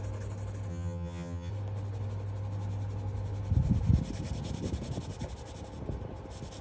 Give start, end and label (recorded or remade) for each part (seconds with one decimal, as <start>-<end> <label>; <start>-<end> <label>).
0.0-0.7 recorded; 0.7-1.5 remade; 1.5-6.6 recorded